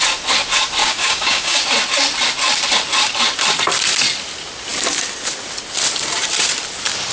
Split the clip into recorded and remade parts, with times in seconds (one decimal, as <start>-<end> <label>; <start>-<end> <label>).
0.0-0.8 recorded; 0.8-1.6 remade; 1.6-7.1 recorded